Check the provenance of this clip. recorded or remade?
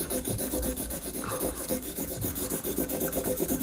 remade